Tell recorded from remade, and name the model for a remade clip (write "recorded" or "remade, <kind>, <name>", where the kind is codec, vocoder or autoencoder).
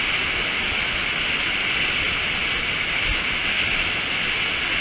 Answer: recorded